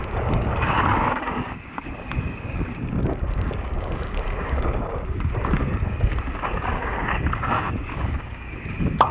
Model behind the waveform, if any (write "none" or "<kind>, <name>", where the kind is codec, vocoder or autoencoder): codec, DAC